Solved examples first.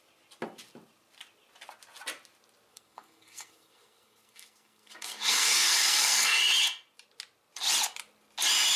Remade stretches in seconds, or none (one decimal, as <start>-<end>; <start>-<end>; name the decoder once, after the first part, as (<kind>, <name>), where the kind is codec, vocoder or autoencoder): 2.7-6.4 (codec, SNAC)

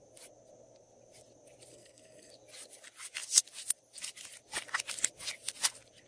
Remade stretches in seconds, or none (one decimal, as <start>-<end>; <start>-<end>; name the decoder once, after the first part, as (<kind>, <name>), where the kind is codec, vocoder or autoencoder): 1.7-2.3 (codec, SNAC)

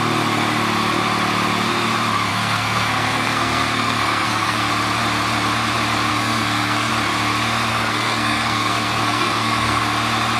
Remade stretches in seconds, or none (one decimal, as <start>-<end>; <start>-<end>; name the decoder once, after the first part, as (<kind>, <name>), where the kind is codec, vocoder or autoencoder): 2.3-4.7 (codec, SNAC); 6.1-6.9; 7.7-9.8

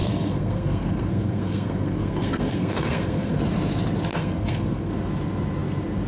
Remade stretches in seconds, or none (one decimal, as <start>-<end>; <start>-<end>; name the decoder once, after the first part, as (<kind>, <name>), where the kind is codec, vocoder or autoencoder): 0.0-3.4 (codec, SNAC); 4.1-4.9

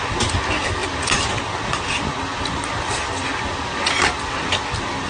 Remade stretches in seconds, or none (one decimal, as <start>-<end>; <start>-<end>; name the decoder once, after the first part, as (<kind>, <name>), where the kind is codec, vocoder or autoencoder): none

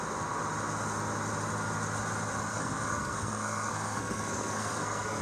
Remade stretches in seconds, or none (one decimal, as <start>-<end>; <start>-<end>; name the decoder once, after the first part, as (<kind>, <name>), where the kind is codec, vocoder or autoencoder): 2.5-5.2 (codec, SNAC)

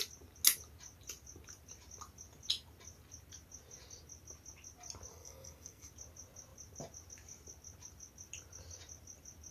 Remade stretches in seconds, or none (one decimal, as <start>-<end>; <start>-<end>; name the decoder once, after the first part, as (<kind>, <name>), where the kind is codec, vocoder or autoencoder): 5.1-5.9 (codec, SNAC)

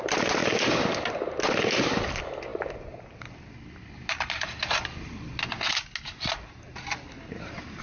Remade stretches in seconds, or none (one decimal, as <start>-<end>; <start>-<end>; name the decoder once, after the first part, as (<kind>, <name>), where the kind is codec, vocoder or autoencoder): none